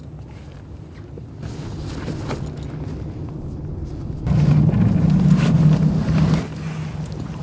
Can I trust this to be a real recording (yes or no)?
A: yes